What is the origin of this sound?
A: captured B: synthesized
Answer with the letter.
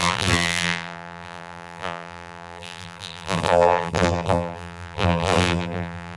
B